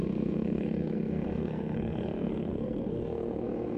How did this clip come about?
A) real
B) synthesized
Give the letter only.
B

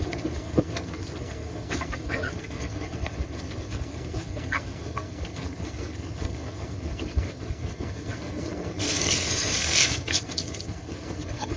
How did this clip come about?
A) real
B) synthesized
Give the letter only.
B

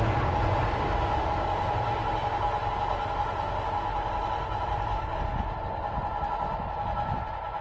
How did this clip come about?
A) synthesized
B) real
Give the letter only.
B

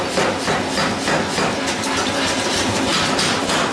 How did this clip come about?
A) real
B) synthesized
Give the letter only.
A